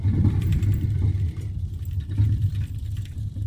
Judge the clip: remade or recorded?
recorded